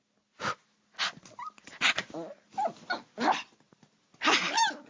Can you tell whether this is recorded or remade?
recorded